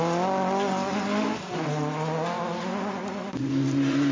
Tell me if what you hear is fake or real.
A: real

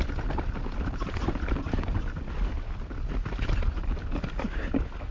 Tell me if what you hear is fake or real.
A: real